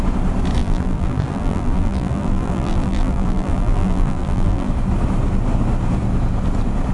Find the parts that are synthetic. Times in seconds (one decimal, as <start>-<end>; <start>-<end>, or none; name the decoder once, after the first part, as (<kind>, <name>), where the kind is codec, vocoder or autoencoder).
0.6-4.7 (vocoder, BigVGAN v2)